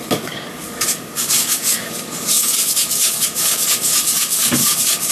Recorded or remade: remade